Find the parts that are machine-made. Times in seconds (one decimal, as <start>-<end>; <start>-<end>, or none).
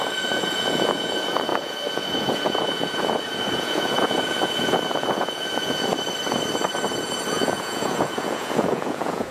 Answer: 0.0-5.9; 7.3-9.3